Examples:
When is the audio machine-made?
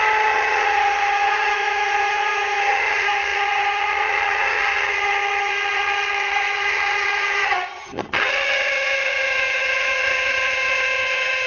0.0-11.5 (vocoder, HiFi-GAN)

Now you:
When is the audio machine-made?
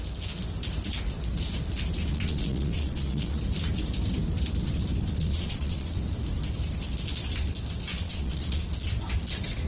2.1-3.4 (vocoder, Vocos); 5.2-5.9; 7.9-8.6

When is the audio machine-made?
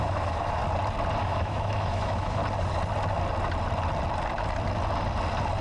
0.0-0.6 (autoencoder, DAC-VAE); 1.2-2.4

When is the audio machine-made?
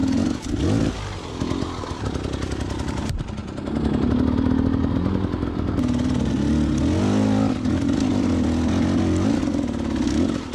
none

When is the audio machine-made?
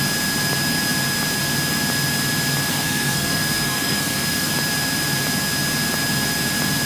2.7-4.5 (codec, SNAC)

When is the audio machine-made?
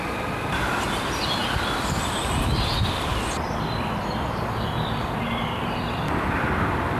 0.0-1.4 (vocoder, BigVGAN v2); 2.6-7.0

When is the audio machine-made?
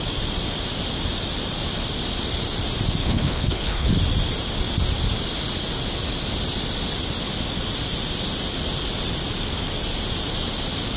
3.0-3.9 (codec, HILCodec)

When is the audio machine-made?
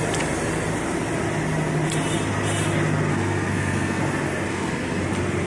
3.1-4.0 (codec, SNAC); 4.5-5.0